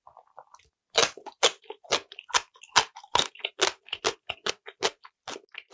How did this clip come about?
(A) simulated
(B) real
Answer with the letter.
B